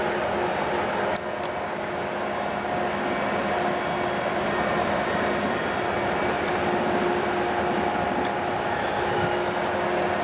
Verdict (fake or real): real